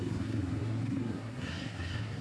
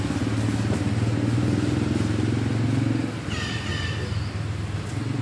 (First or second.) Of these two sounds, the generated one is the first